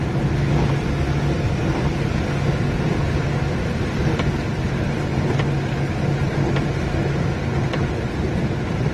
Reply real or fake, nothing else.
real